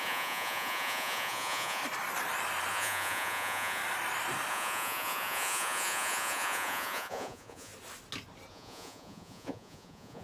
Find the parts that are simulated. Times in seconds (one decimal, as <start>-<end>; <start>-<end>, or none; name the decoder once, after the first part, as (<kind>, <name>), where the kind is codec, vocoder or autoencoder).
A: 0.0-1.8 (vocoder, Vocos); 2.7-3.8; 4.5-7.7; 8.5-10.2